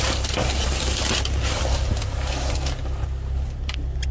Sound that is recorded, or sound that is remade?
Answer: recorded